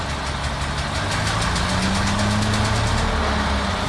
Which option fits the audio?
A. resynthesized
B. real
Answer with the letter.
B